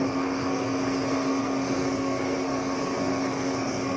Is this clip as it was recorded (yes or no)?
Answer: no